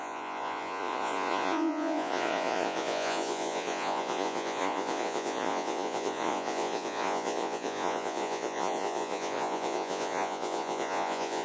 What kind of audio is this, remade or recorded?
remade